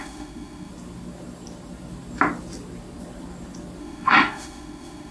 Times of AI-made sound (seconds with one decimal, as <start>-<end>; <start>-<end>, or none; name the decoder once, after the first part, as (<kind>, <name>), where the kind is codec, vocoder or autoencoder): 0.0-0.7 (autoencoder, DAC-VAE); 3.8-5.1